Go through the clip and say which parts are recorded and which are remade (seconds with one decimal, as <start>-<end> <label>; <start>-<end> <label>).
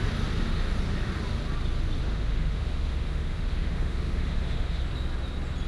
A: 0.0-2.0 recorded; 2.0-4.8 remade; 4.8-5.7 recorded